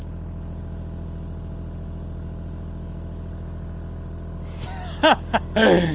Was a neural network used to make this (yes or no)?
no